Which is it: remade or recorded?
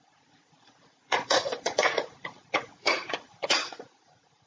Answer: remade